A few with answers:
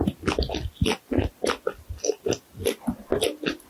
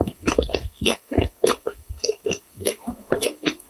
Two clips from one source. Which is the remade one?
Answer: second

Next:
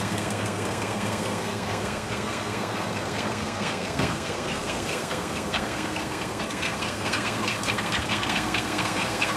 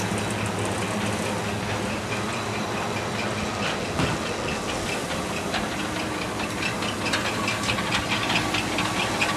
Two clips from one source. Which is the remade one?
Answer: first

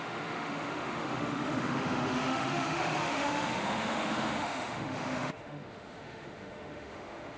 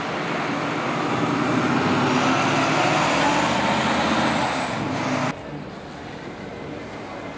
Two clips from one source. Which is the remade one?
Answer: first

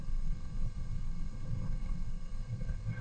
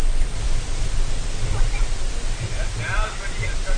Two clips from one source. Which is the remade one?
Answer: first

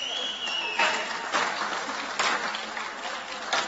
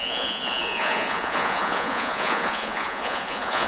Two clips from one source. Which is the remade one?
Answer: second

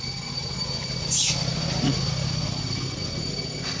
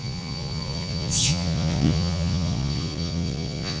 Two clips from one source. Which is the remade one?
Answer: second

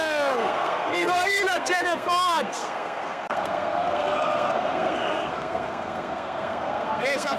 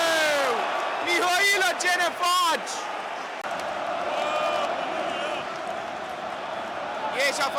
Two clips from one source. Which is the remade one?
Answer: first